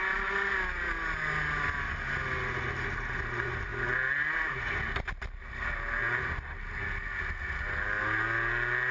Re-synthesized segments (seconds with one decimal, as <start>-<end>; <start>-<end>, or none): none